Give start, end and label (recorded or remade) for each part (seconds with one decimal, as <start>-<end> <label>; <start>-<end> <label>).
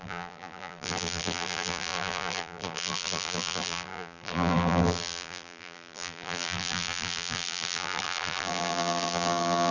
0.0-9.7 remade